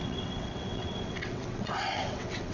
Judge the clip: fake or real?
fake